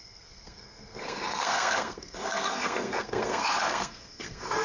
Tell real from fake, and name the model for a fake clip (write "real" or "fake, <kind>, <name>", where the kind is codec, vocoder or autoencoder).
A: fake, codec, SNAC